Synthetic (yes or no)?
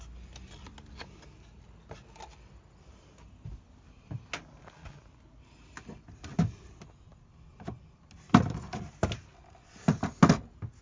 no